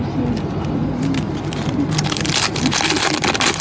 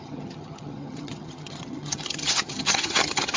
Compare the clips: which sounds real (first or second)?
first